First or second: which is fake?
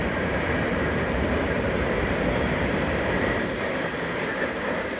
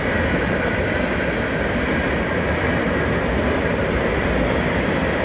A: first